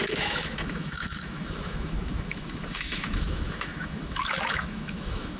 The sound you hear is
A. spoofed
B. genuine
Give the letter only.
A